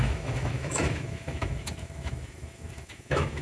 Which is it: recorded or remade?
remade